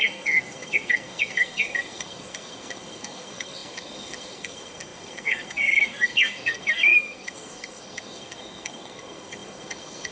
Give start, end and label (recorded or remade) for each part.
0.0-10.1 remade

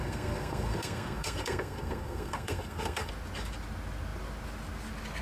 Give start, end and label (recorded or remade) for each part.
0.0-3.1 remade; 3.1-5.2 recorded

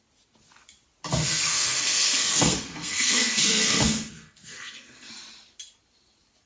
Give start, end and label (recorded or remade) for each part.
0.0-1.2 recorded; 1.2-5.1 remade; 5.1-6.5 recorded

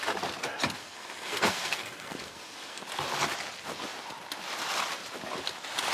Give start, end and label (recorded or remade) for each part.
0.0-0.8 recorded; 0.8-2.8 remade; 2.8-5.9 recorded

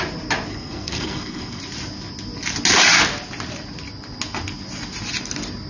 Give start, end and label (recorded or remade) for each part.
0.0-0.5 recorded; 0.5-1.6 remade; 1.6-5.7 recorded

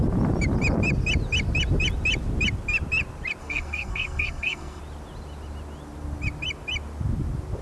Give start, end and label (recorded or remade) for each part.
0.0-3.4 recorded; 3.4-4.8 remade; 4.8-7.6 recorded